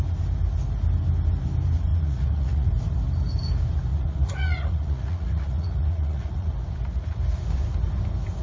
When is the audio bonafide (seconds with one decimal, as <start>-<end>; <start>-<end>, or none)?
0.0-1.9; 2.7-3.9; 6.5-8.4